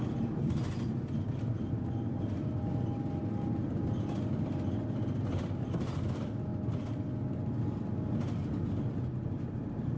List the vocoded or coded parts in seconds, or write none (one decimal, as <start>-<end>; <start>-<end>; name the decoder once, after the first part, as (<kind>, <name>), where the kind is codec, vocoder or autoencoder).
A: none